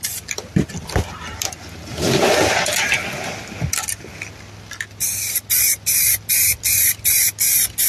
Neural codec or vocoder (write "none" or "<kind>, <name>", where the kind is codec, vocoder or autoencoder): none